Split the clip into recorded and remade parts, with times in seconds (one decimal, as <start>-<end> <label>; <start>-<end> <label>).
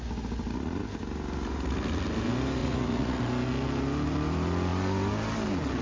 0.0-2.6 recorded; 2.6-3.2 remade; 3.2-5.8 recorded